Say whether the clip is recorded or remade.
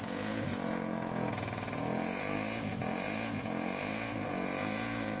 remade